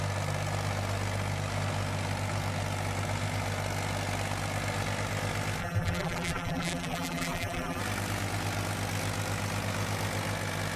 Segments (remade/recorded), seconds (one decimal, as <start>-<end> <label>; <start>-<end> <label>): 0.0-5.6 recorded; 5.6-7.8 remade; 7.8-10.8 recorded